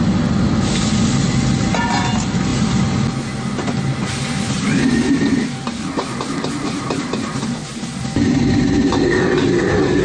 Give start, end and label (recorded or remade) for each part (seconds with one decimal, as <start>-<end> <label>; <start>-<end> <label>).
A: 0.0-10.0 recorded